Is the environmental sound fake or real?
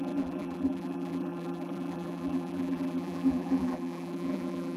fake